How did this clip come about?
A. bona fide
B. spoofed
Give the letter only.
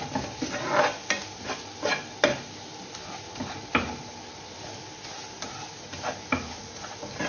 A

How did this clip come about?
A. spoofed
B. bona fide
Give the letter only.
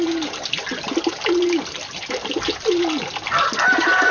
B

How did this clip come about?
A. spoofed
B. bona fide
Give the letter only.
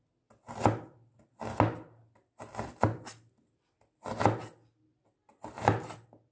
B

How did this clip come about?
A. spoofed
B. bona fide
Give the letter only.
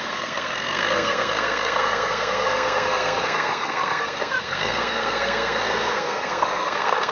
A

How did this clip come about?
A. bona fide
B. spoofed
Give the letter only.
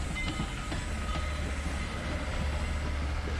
A